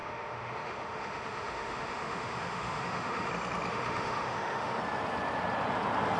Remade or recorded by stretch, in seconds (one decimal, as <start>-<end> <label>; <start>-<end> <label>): 0.0-3.3 remade; 3.3-3.7 recorded; 3.7-4.8 remade; 4.8-6.2 recorded